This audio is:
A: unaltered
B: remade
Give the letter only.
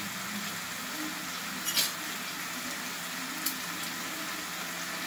A